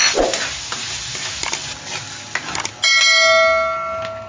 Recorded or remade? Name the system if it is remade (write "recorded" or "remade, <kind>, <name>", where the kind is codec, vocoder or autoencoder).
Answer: recorded